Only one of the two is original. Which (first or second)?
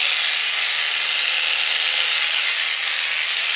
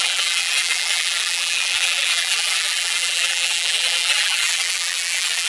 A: first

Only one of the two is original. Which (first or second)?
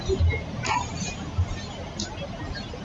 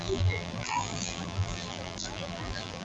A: first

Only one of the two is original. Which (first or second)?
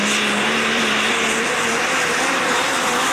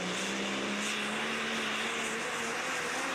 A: second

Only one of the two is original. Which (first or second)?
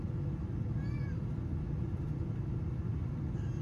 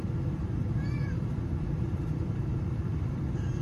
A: first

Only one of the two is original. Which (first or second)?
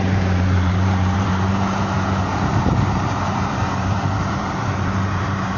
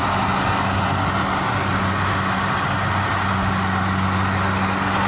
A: second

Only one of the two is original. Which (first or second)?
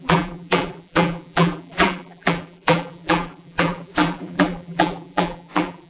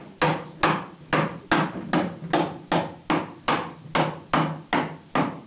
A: second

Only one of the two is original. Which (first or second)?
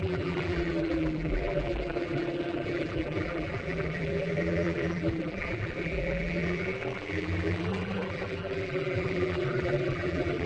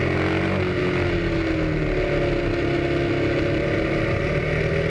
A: second